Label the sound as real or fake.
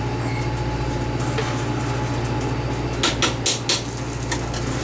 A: real